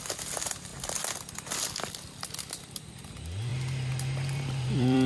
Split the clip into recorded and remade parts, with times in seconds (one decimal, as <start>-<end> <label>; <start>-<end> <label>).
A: 0.0-3.5 recorded; 3.5-5.1 remade